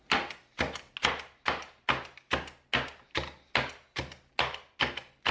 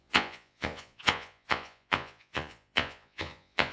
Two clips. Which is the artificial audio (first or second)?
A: second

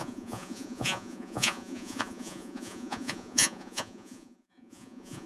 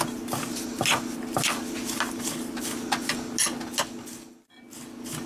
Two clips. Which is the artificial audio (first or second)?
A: first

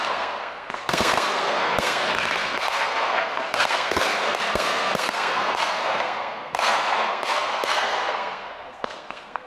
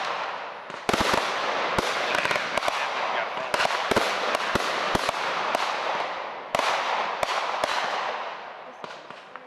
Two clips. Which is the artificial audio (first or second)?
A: first